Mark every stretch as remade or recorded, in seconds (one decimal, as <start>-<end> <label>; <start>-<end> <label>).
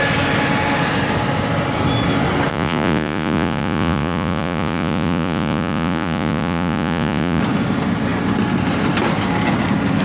0.0-2.5 recorded; 2.5-7.4 remade; 7.4-10.0 recorded